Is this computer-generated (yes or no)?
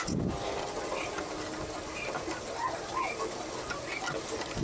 no